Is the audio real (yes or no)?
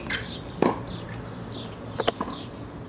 yes